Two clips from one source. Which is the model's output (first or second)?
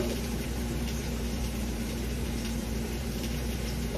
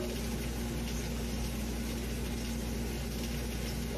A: first